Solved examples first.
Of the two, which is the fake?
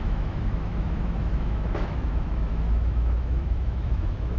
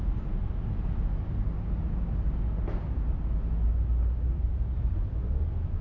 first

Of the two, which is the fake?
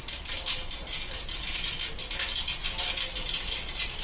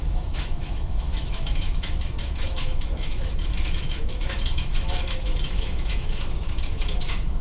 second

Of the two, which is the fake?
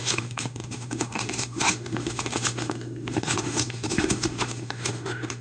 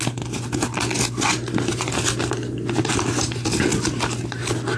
first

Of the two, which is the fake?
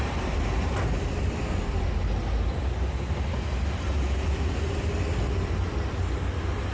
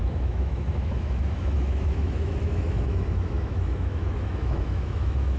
second